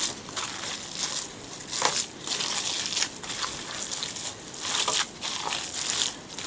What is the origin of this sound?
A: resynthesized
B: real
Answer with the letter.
B